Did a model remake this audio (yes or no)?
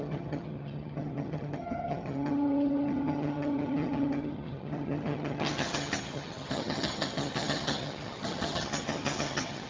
yes